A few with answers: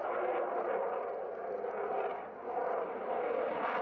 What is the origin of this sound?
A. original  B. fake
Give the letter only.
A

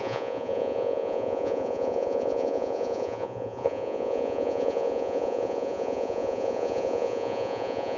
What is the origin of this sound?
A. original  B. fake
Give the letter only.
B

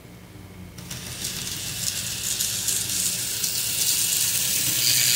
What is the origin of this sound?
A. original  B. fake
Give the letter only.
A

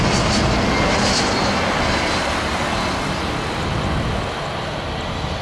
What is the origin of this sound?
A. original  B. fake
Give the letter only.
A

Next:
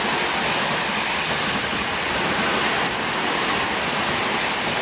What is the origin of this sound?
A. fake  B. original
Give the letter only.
A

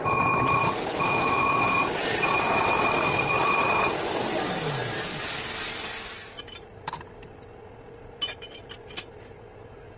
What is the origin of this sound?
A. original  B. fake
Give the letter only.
A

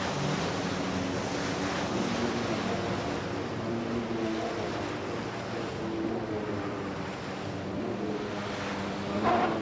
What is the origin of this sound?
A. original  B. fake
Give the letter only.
A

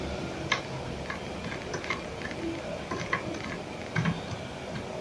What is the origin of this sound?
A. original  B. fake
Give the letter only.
A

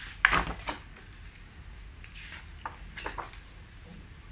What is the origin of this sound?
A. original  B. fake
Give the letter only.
A